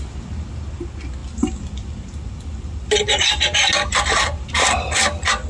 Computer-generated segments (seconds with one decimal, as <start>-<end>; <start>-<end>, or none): none